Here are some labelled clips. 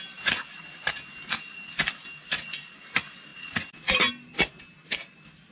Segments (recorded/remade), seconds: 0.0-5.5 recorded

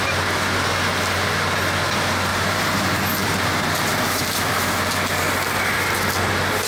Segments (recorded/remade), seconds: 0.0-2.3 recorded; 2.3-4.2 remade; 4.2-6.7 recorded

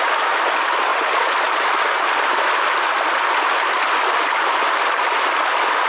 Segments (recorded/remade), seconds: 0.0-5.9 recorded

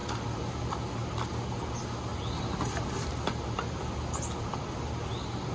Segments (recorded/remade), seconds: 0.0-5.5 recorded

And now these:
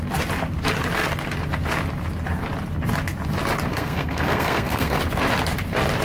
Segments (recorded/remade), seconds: 0.0-3.7 recorded; 3.7-5.0 remade; 5.0-6.0 recorded

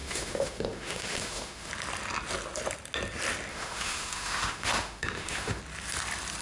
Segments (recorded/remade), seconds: 0.0-1.7 remade; 1.7-3.5 recorded; 3.5-5.6 remade; 5.6-6.4 recorded

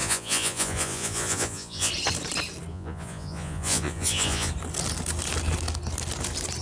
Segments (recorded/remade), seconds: 0.0-1.9 remade; 1.9-2.7 recorded; 2.7-4.5 remade; 4.5-6.6 recorded

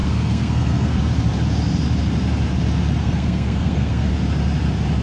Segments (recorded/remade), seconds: 0.0-1.0 remade; 1.0-3.0 recorded; 3.0-4.1 remade; 4.1-5.0 recorded